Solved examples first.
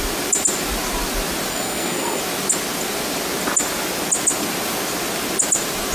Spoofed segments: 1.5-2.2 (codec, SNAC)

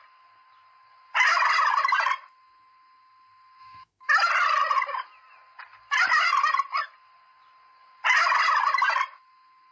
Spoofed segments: 3.6-4.1 (autoencoder, DAC-VAE)

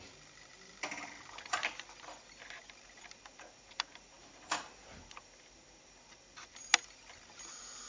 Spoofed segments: none

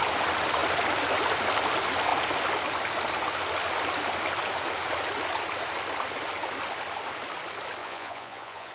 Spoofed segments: 7.8-8.7 (vocoder, Vocos)

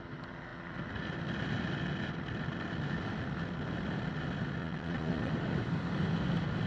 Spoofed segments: 4.6-5.3 (vocoder, Vocos)